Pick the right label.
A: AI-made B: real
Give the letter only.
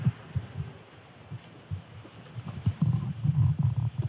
B